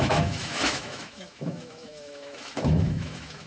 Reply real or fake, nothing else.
fake